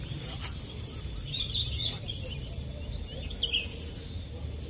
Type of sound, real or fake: real